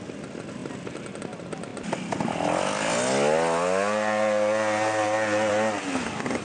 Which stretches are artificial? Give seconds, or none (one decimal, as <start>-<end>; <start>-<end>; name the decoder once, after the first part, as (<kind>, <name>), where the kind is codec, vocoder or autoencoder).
none